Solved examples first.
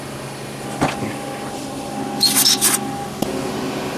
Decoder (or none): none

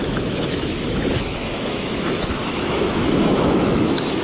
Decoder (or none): autoencoder, DAC-VAE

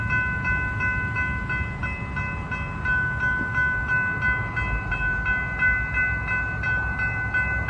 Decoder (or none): none